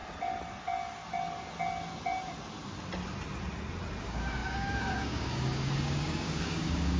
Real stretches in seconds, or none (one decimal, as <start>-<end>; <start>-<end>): 0.0-4.0